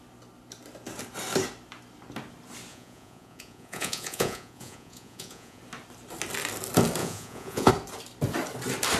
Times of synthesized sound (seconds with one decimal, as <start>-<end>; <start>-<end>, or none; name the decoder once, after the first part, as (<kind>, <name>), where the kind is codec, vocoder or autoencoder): 2.7-5.6 (vocoder, Vocos); 7.0-7.7